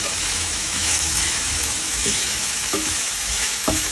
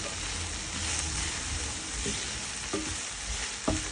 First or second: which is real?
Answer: second